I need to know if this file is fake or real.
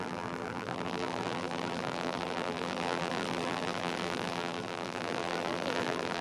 fake